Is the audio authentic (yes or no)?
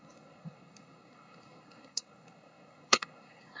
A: no